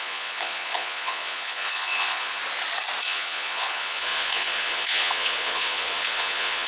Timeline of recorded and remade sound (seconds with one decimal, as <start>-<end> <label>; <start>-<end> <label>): 0.0-2.4 remade; 2.4-3.0 recorded; 3.0-6.7 remade